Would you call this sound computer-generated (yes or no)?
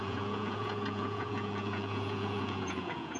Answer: yes